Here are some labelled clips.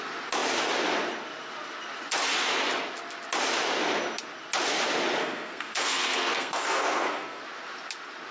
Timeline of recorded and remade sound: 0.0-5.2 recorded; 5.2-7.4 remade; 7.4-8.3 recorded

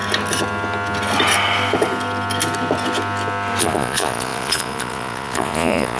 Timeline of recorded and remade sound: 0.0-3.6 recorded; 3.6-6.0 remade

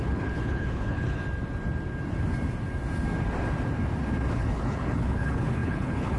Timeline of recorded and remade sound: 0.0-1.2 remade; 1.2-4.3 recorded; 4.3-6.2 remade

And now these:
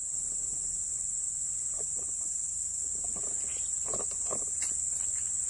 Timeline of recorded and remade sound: 0.0-5.5 recorded

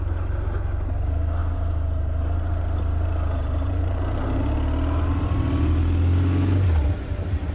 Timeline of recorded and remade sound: 0.0-1.4 recorded; 1.4-4.4 remade; 4.4-7.5 recorded